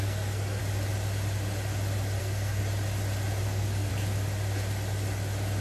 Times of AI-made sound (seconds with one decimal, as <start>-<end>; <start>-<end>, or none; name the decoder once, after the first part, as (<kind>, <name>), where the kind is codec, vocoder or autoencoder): 0.0-0.6 (codec, SNAC); 2.2-2.6; 3.4-3.9